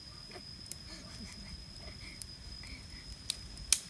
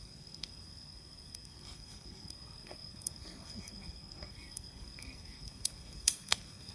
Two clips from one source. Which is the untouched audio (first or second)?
first